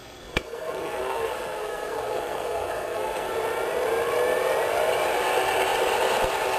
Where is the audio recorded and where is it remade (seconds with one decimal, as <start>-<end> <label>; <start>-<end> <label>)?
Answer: 0.0-3.3 remade; 3.3-6.6 recorded